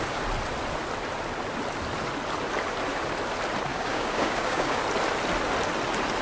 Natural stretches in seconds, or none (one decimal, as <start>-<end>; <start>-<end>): 0.0-3.7; 4.8-6.2